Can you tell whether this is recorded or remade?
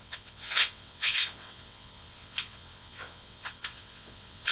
remade